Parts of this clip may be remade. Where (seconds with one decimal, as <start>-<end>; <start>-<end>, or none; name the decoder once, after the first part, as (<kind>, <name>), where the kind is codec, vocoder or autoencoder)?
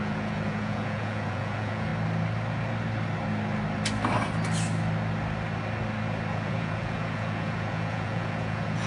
0.0-1.9 (vocoder, Vocos); 6.3-8.9